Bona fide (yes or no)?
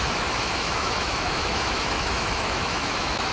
no